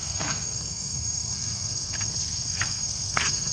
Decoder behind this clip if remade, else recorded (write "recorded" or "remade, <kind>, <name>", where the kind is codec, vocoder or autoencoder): remade, codec, SNAC